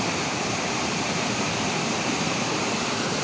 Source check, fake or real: fake